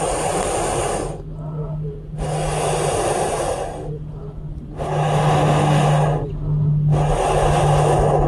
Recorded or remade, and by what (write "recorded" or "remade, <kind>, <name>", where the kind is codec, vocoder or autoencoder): recorded